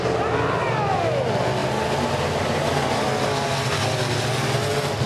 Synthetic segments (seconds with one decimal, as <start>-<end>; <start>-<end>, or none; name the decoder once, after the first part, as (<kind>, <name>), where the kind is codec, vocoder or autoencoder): none